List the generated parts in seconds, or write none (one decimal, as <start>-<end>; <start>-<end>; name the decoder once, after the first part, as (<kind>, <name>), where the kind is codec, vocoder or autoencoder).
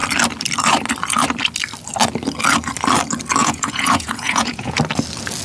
3.4-4.8 (vocoder, Vocos)